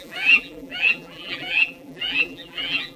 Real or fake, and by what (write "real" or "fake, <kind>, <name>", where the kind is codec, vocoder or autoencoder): fake, vocoder, BigVGAN v2